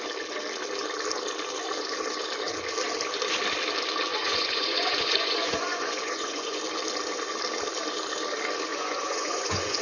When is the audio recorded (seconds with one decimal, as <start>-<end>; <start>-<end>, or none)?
0.0-4.1; 6.6-8.7

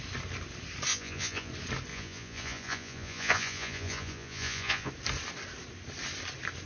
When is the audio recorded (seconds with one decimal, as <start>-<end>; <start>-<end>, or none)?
0.0-0.9; 1.5-1.9; 4.9-6.7